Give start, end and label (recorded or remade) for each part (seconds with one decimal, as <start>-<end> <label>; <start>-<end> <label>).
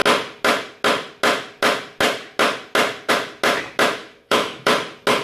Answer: 0.0-4.0 recorded; 4.0-4.7 remade; 4.7-5.2 recorded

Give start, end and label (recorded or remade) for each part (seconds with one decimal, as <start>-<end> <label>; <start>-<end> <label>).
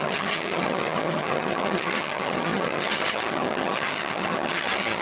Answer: 0.0-5.0 remade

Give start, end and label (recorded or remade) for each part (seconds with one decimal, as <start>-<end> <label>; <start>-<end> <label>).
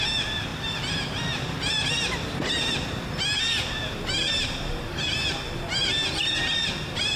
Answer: 0.0-7.2 recorded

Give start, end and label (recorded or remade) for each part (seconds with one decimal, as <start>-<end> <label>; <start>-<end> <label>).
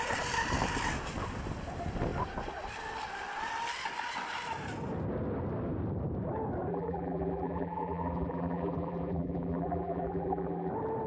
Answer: 0.0-6.7 recorded; 6.7-10.7 remade; 10.7-11.1 recorded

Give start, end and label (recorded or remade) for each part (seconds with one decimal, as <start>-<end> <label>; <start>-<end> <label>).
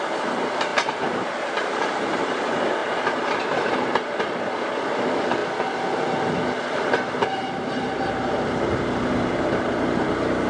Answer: 0.0-5.4 remade; 5.4-6.6 recorded; 6.6-10.5 remade